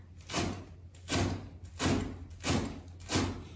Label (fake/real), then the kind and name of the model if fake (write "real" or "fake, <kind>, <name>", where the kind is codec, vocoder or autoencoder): real